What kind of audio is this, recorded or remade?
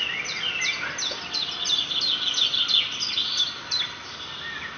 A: recorded